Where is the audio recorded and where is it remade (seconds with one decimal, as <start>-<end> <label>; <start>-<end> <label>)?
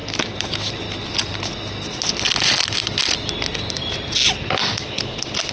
0.0-4.2 recorded; 4.2-5.5 remade